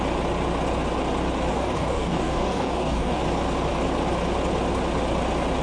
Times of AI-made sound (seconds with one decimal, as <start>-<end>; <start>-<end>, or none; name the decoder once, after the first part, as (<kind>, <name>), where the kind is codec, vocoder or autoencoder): 1.5-3.2 (codec, DAC)